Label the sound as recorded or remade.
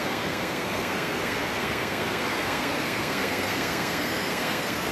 remade